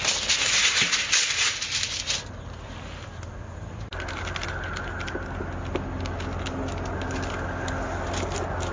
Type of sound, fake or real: real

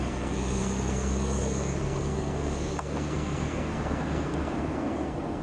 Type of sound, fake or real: fake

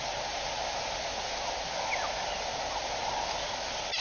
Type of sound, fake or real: real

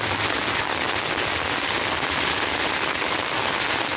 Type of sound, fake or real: real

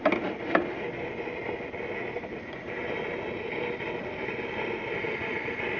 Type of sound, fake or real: real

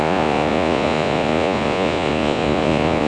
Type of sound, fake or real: fake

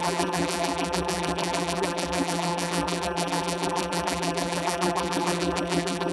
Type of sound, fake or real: fake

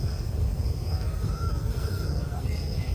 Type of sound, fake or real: fake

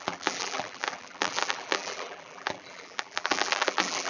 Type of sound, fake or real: fake